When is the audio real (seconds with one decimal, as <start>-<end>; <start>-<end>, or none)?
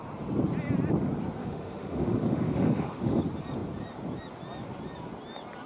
0.0-1.4; 3.2-5.7